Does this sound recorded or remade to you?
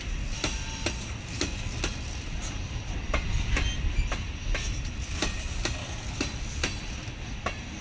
recorded